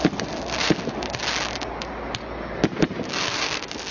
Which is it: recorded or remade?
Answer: recorded